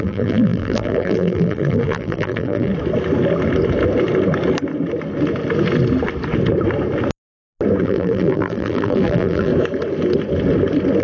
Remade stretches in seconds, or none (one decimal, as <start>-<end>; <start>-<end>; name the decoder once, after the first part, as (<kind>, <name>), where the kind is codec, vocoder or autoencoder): 0.0-2.7 (vocoder, BigVGAN v2); 7.8-9.5